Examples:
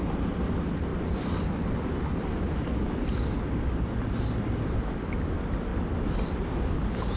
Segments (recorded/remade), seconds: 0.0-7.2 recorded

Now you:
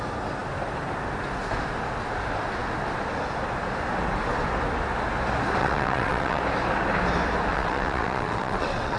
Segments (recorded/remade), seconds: 0.0-5.6 recorded; 5.6-6.4 remade; 6.4-7.5 recorded; 7.5-9.0 remade

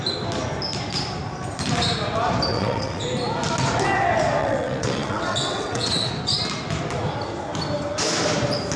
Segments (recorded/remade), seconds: 0.0-2.5 recorded; 2.5-3.0 remade; 3.0-4.4 recorded; 4.4-6.1 remade; 6.1-8.8 recorded

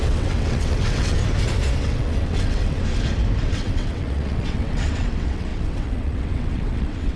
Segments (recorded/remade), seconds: 0.0-1.2 remade; 1.2-1.8 recorded; 1.8-2.8 remade; 2.8-3.4 recorded; 3.4-7.2 remade

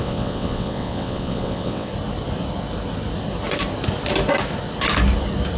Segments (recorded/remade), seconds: 0.0-1.9 remade; 1.9-5.6 recorded

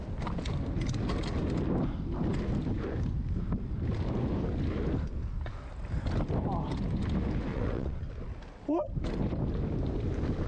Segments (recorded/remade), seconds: 0.0-7.5 recorded; 7.5-8.1 remade; 8.1-10.5 recorded

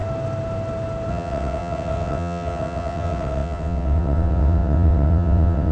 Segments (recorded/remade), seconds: 0.0-1.1 recorded; 1.1-5.7 remade